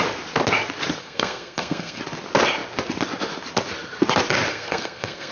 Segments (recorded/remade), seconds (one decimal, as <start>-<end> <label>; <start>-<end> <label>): 0.0-1.0 recorded; 1.0-2.0 remade; 2.0-4.5 recorded; 4.5-5.3 remade